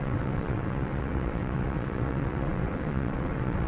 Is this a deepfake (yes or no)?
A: yes